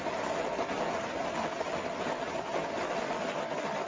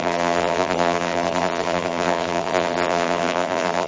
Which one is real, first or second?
first